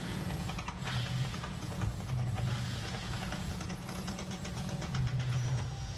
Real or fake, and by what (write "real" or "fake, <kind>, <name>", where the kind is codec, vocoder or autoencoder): fake, vocoder, Vocos